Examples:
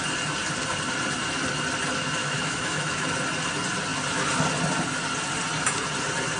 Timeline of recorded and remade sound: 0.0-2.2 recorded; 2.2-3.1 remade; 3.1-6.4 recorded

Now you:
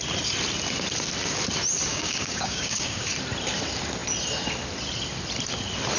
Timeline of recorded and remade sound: 0.0-1.9 recorded; 1.9-3.1 remade; 3.1-6.0 recorded

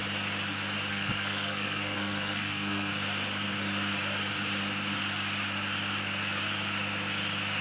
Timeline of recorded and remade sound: 0.0-0.9 recorded; 0.9-2.9 remade; 2.9-7.6 recorded

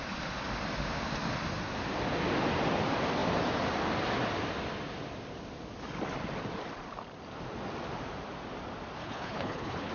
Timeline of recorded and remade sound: 0.0-9.0 recorded; 9.0-9.9 remade

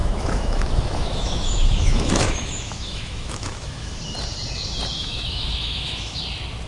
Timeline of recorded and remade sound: 0.0-4.0 remade; 4.0-5.0 recorded; 5.0-6.2 remade; 6.2-6.7 recorded

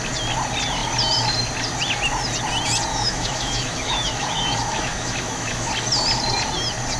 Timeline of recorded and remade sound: 0.0-2.9 recorded; 2.9-5.7 remade; 5.7-7.0 recorded

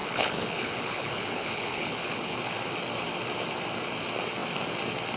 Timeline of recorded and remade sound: 0.0-2.4 remade; 2.4-5.2 recorded

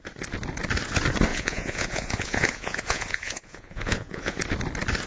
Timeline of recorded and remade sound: 0.0-1.3 recorded; 1.3-4.4 remade; 4.4-5.1 recorded